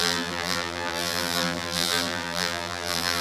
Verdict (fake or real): fake